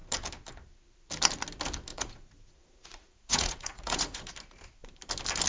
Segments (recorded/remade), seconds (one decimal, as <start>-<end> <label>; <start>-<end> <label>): 0.0-1.9 recorded; 1.9-4.3 remade; 4.3-5.5 recorded